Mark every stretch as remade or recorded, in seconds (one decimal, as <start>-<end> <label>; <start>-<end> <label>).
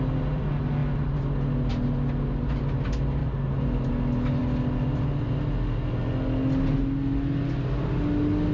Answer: 0.0-3.2 recorded; 3.2-3.9 remade; 3.9-8.5 recorded